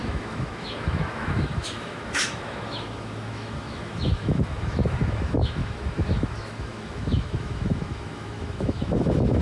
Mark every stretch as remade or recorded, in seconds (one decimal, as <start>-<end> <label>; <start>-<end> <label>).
0.0-9.4 remade